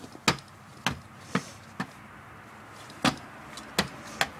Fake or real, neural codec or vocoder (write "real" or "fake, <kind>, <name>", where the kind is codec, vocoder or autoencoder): real